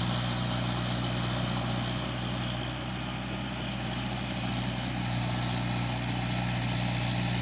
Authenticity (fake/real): real